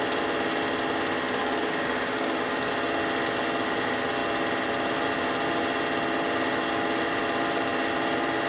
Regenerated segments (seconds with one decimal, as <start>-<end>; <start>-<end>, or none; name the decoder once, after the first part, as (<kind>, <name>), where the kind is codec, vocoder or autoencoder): 1.4-2.7 (codec, DAC)